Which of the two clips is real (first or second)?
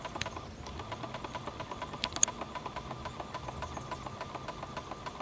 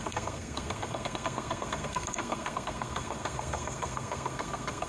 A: first